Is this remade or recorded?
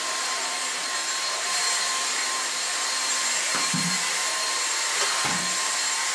remade